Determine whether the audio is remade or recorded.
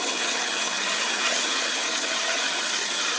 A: remade